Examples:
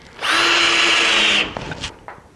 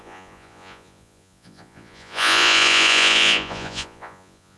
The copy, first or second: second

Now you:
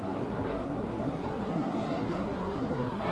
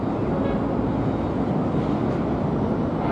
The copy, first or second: first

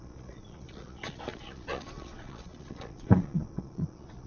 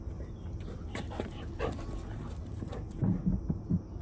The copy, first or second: first